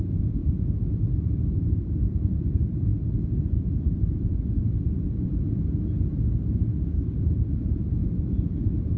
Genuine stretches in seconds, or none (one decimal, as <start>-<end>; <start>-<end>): 2.9-3.7; 4.3-6.8

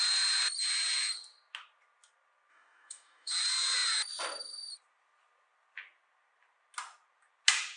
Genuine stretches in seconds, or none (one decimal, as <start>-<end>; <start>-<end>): 0.0-2.5; 3.3-7.8

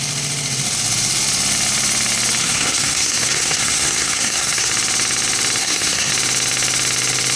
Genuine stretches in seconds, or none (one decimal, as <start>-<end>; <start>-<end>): 0.0-2.4; 4.7-5.6; 6.1-7.4

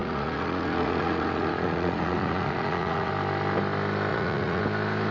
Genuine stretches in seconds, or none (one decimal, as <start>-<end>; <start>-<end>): 3.1-4.1; 4.6-5.1

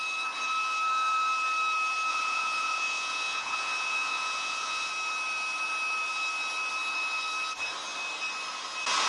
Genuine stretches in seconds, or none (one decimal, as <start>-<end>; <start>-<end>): 0.0-2.1; 4.9-9.1

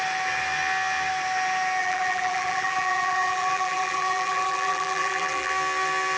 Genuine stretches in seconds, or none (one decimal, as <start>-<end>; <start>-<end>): 0.0-1.8; 5.5-6.2

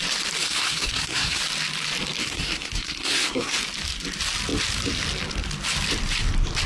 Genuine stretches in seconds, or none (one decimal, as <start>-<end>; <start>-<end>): 0.0-0.4; 1.4-2.2; 3.6-6.7

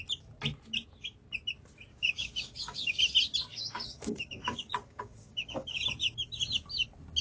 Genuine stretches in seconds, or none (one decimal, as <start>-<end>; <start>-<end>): 0.0-1.9; 3.0-3.5; 5.8-7.2